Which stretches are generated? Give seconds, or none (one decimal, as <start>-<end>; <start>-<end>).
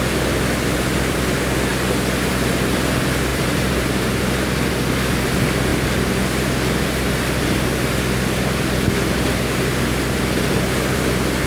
3.3-4.7